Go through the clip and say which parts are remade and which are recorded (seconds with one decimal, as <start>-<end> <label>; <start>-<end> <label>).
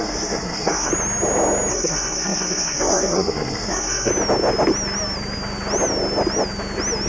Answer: 0.0-0.9 remade; 0.9-1.7 recorded; 1.7-4.1 remade; 4.1-7.1 recorded